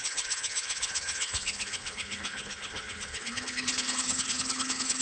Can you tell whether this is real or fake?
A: fake